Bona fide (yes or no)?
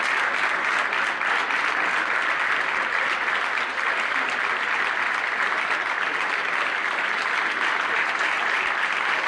yes